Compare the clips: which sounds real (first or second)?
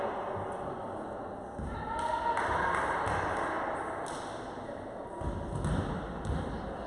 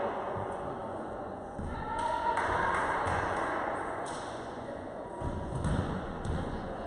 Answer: first